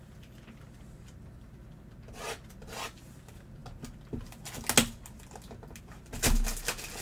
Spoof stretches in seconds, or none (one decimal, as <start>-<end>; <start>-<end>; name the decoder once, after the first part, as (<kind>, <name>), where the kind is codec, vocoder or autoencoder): none